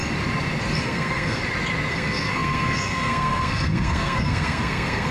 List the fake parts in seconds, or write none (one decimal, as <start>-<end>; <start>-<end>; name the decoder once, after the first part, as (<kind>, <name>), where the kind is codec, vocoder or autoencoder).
0.8-1.4 (codec, SNAC); 1.9-5.1